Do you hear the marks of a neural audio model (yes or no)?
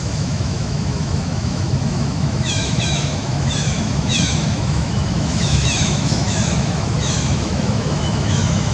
yes